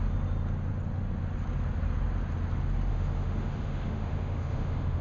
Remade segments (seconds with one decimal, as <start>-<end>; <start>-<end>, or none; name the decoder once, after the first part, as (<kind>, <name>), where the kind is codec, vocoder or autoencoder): 2.9-5.0 (autoencoder, DAC-VAE)